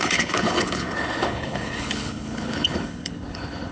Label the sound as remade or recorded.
remade